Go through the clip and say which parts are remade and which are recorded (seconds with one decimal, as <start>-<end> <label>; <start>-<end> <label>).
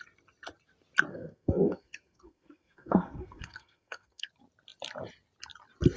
0.0-1.1 recorded; 1.1-4.3 remade; 4.3-6.0 recorded